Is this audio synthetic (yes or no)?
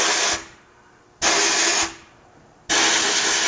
no